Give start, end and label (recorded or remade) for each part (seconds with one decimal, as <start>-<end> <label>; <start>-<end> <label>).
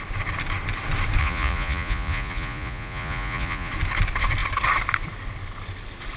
0.0-1.2 recorded; 1.2-3.7 remade; 3.7-6.2 recorded